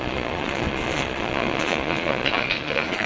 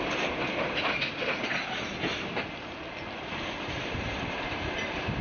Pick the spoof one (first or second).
first